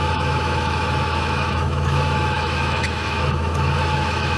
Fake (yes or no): yes